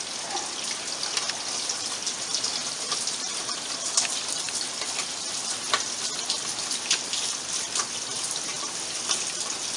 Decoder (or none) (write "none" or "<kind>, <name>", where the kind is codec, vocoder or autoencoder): none